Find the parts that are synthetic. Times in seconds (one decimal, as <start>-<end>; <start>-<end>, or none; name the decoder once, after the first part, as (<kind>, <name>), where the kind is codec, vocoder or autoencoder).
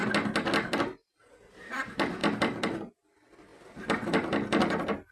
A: 2.2-2.9 (vocoder, BigVGAN v2); 3.5-5.1